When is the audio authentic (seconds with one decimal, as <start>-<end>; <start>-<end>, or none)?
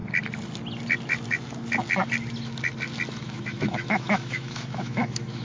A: 0.0-3.2